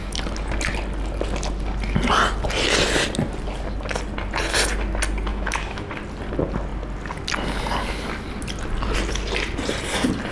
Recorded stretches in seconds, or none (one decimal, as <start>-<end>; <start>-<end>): 0.0-5.3; 5.9-10.3